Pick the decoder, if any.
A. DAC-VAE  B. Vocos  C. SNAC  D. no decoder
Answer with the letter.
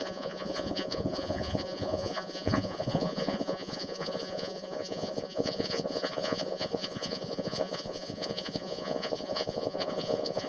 B